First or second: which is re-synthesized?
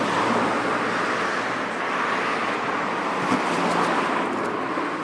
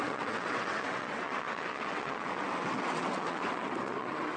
second